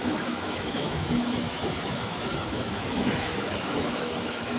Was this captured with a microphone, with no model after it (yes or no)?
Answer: no